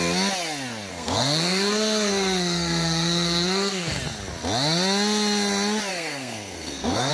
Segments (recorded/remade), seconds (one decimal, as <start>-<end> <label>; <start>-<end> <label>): 0.0-0.9 recorded; 0.9-4.0 remade; 4.0-5.9 recorded; 5.9-7.1 remade